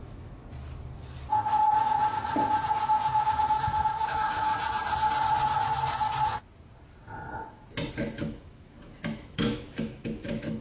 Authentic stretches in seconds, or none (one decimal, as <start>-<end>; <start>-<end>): 0.4-3.4; 4.5-7.9